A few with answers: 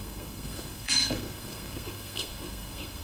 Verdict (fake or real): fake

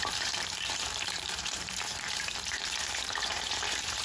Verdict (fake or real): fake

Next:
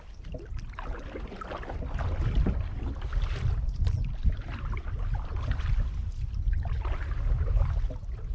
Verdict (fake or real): real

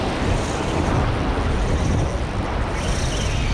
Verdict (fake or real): real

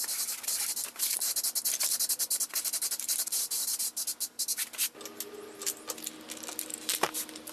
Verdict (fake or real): real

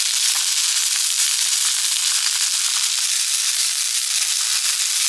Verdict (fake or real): real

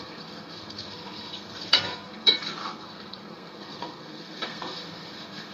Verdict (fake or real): fake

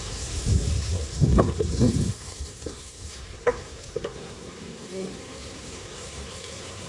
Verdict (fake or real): fake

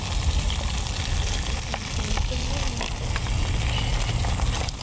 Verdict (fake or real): real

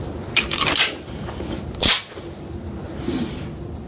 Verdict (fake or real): fake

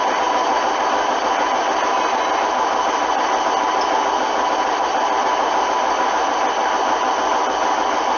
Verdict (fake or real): real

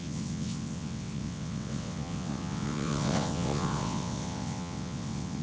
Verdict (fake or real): fake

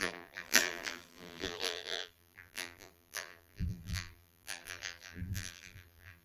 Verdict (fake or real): fake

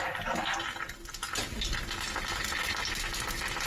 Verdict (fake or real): real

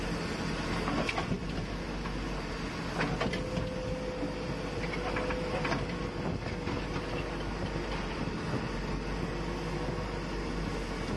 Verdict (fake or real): real